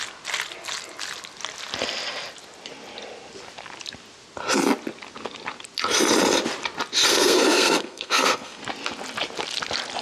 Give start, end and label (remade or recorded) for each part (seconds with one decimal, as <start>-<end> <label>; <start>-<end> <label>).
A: 0.0-7.1 recorded; 7.1-8.6 remade; 8.6-10.0 recorded